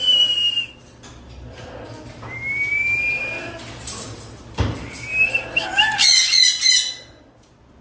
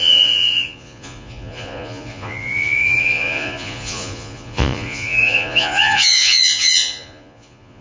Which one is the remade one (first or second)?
second